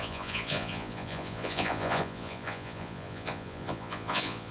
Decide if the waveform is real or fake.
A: fake